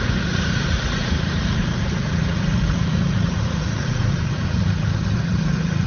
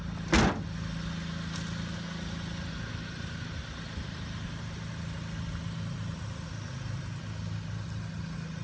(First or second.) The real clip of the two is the second